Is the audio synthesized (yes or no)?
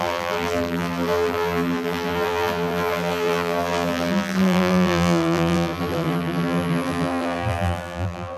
yes